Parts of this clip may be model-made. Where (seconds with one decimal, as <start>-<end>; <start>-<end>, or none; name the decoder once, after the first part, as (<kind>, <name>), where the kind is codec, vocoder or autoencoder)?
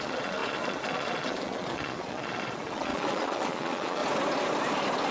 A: 0.0-4.0 (vocoder, Vocos)